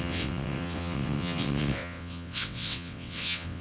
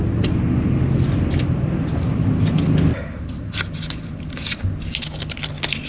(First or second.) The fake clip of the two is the first